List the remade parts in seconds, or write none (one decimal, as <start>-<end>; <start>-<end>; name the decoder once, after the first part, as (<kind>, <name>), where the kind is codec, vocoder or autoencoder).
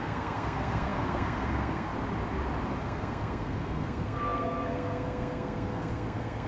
0.0-1.9 (codec, SNAC); 2.8-6.5